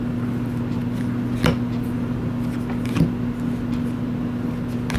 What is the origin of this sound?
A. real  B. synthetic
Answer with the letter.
A